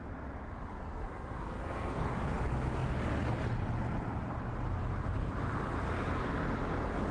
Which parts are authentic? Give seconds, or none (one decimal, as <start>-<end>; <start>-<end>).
0.0-0.7; 2.1-7.1